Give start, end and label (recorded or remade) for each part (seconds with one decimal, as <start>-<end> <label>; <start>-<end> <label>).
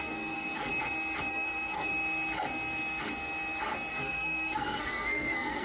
0.0-0.7 remade; 0.7-1.3 recorded; 1.3-1.9 remade; 1.9-3.9 recorded; 3.9-5.6 remade